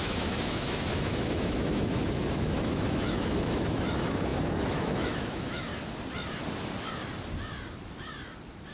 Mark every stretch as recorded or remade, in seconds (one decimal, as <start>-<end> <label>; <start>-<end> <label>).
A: 0.0-5.7 remade; 5.7-8.7 recorded

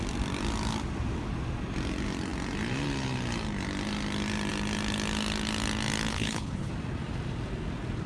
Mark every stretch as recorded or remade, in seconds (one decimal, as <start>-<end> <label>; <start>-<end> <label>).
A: 0.0-6.1 recorded; 6.1-6.7 remade; 6.7-8.1 recorded

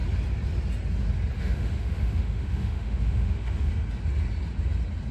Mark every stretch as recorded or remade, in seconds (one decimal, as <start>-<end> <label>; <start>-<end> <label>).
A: 0.0-1.4 recorded; 1.4-3.7 remade; 3.7-5.1 recorded

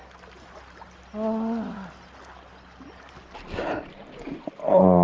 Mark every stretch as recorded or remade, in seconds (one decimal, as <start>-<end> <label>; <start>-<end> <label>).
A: 0.0-5.0 recorded

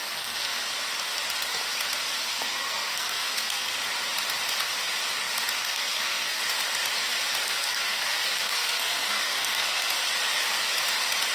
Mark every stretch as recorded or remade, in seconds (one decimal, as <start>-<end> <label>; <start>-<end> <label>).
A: 0.0-0.6 remade; 0.6-2.2 recorded; 2.2-3.8 remade; 3.8-5.6 recorded; 5.6-6.4 remade; 6.4-7.4 recorded; 7.4-9.9 remade; 9.9-11.3 recorded

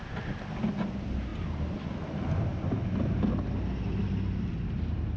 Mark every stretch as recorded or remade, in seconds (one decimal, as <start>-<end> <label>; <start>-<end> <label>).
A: 0.0-5.2 recorded

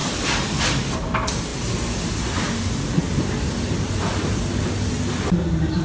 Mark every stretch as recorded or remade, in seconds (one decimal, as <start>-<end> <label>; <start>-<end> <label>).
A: 0.0-5.8 recorded

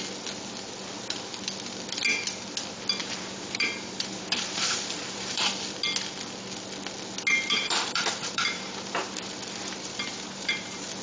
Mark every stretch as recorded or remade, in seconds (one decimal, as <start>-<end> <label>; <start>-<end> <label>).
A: 0.0-3.0 recorded; 3.0-5.4 remade; 5.4-7.3 recorded; 7.3-11.0 remade